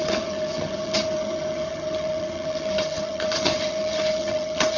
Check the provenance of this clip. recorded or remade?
remade